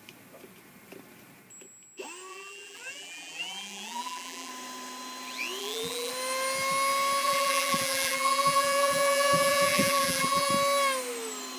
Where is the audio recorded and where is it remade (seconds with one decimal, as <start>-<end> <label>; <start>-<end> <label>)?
0.0-2.3 recorded; 2.3-4.5 remade; 4.5-5.6 recorded; 5.6-6.1 remade; 6.1-7.2 recorded; 7.2-10.5 remade; 10.5-11.6 recorded